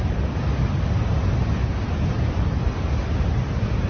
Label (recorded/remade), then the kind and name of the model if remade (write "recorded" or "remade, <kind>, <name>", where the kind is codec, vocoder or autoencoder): remade, vocoder, BigVGAN v2